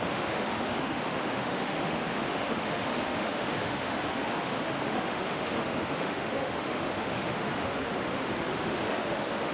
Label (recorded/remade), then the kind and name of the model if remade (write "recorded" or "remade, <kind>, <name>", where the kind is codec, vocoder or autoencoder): remade, autoencoder, DAC-VAE